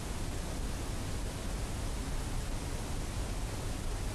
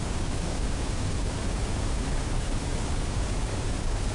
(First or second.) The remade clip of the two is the second